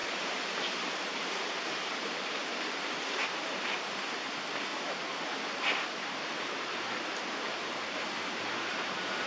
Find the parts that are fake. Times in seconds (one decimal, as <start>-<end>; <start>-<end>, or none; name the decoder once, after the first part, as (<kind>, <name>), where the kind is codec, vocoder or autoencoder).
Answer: 0.0-9.3 (vocoder, BigVGAN v2)